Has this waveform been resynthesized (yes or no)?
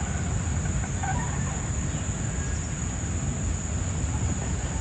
no